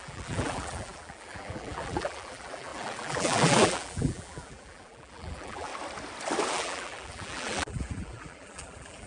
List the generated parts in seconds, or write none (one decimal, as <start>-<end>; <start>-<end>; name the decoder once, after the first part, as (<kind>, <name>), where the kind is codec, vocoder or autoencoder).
0.0-5.7 (vocoder, BigVGAN v2); 6.5-9.1

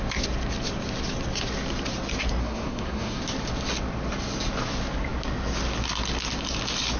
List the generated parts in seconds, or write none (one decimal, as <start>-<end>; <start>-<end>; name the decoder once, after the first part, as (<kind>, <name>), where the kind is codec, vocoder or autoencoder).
2.4-3.2 (codec, SNAC)

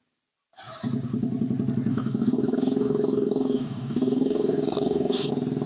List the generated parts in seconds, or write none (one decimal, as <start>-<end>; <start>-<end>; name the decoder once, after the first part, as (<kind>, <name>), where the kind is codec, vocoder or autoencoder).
1.9-5.3 (codec, DAC)

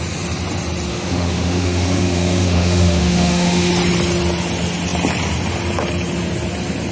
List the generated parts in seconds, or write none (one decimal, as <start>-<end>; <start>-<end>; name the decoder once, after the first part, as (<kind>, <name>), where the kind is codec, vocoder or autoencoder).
0.9-3.7 (autoencoder, DAC-VAE)

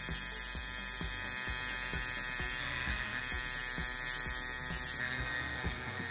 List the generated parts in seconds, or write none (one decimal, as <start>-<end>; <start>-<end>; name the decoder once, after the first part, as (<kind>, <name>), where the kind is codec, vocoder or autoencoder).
2.6-3.2 (codec, SNAC); 5.0-6.1

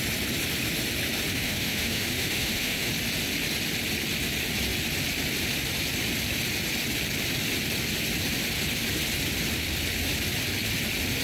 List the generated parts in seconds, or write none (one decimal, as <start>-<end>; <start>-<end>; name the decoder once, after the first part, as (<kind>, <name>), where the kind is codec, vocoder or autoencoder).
1.3-2.9 (autoencoder, DAC-VAE)

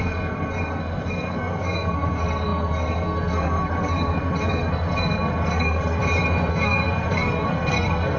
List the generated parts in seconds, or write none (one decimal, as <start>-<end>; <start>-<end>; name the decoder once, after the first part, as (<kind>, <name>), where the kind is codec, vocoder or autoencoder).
0.0-6.0 (codec, SNAC); 6.5-8.2

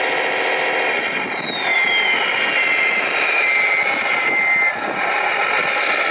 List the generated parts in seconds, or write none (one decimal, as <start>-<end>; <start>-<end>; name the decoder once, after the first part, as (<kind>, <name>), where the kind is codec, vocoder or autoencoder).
1.7-3.7 (vocoder, BigVGAN v2)